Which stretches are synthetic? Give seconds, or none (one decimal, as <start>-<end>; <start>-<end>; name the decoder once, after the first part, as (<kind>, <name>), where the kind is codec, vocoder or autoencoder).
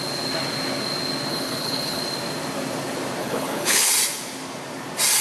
1.3-2.0 (codec, HILCodec); 3.2-3.9